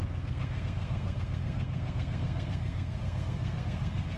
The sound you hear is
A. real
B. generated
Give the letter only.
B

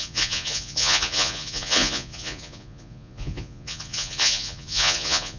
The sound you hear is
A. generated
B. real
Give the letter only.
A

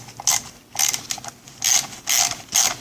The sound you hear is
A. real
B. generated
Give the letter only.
A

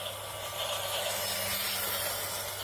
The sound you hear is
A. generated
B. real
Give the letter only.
B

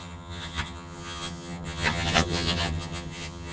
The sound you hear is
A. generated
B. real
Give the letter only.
A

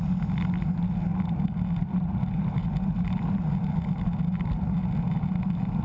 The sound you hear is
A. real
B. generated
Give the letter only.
A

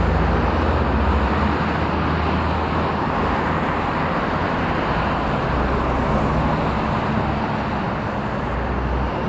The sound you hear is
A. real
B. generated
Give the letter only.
A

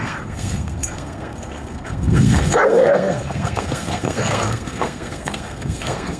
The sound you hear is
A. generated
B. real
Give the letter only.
A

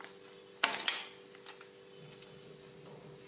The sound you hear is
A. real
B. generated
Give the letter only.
A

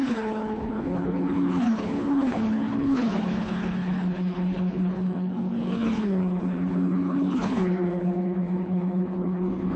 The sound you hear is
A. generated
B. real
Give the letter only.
A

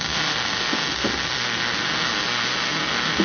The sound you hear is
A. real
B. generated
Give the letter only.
A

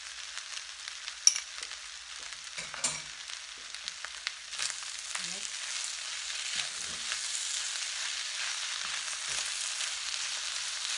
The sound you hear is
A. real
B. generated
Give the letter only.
A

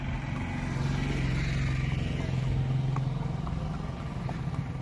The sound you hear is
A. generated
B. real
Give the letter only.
B